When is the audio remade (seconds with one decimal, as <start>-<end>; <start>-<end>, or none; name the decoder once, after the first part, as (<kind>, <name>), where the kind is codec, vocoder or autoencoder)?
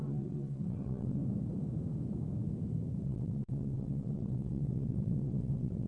0.0-1.2 (vocoder, WaveNeXt); 3.0-5.9